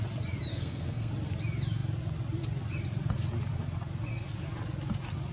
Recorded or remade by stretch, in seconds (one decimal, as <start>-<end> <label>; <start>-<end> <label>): 0.0-0.5 recorded; 0.5-1.1 remade; 1.1-5.3 recorded